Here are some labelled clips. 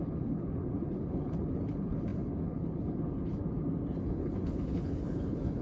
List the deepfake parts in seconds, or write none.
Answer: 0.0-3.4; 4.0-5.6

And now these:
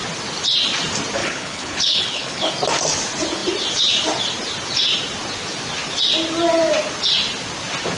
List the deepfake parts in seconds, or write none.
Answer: 1.2-2.5